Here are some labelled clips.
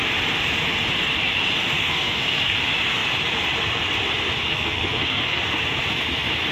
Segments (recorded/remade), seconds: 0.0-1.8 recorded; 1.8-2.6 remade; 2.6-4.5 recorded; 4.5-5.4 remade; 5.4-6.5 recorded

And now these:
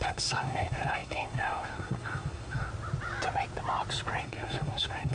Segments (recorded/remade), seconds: 0.0-2.7 remade; 2.7-4.2 recorded; 4.2-5.1 remade

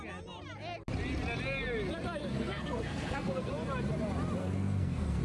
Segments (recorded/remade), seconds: 0.0-2.2 recorded; 2.2-3.5 remade; 3.5-4.4 recorded; 4.4-5.2 remade

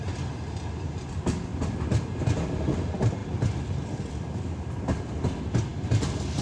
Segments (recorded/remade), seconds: 0.0-6.4 recorded

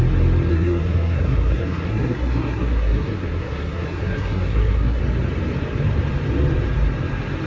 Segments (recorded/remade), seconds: 0.0-0.5 recorded; 0.5-5.0 remade; 5.0-7.5 recorded